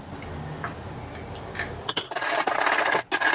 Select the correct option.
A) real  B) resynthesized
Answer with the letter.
A